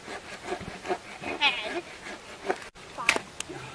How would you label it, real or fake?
real